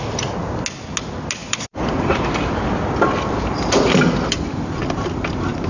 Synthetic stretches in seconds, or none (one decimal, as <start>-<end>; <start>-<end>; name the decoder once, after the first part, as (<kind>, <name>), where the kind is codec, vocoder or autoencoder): 1.4-4.8 (vocoder, BigVGAN v2)